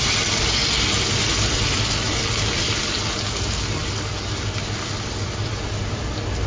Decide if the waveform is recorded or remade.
recorded